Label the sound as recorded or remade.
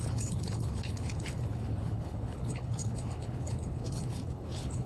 remade